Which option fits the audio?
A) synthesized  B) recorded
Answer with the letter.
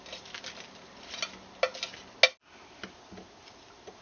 B